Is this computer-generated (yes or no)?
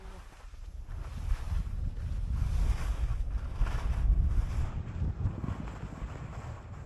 no